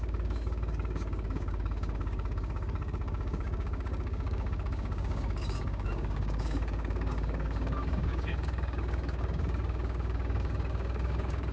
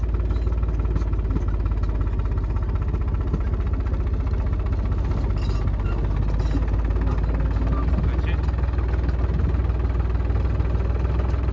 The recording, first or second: second